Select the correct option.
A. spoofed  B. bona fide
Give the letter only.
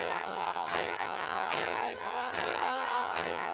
A